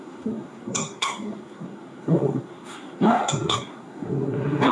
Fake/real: fake